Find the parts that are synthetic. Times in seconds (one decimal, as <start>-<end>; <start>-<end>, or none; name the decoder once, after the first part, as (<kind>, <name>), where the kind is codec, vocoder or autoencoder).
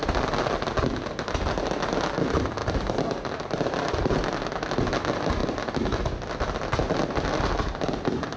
none